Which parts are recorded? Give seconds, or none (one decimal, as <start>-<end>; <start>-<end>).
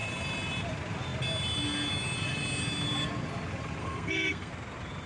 0.0-3.8; 4.5-5.1